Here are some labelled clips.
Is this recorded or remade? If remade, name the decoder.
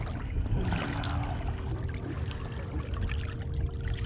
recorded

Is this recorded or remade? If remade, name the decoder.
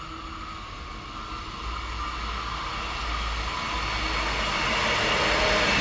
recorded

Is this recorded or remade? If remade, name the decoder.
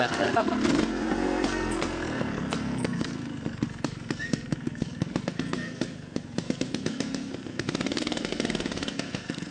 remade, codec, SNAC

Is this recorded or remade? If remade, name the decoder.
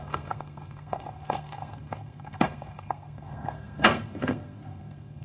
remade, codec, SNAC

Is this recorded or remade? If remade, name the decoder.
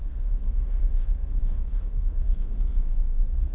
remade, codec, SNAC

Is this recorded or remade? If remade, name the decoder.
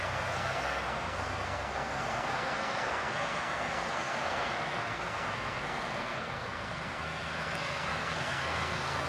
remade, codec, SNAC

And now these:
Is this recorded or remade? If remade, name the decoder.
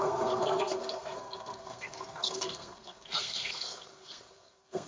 remade, codec, SNAC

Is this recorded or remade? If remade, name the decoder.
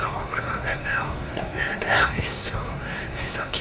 remade, codec, SNAC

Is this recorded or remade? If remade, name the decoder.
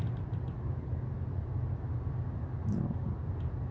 recorded